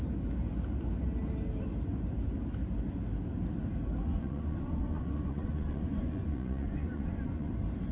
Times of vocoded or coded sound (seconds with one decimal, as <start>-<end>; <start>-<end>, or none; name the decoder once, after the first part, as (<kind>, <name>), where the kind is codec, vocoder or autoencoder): 4.0-7.5 (vocoder, Vocos)